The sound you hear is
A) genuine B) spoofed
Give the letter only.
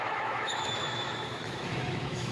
B